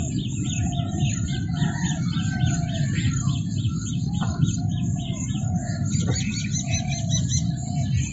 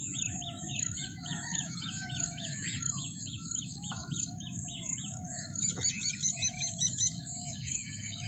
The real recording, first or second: first